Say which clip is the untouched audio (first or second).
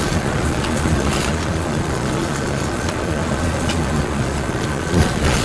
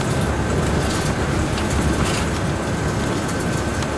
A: second